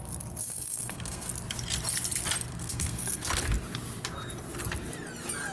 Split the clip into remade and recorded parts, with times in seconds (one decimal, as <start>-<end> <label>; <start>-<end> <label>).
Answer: 0.0-0.4 recorded; 0.4-1.3 remade; 1.3-2.5 recorded; 2.5-3.3 remade; 3.3-5.5 recorded